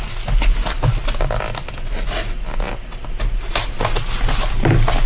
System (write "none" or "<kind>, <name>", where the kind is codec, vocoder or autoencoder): none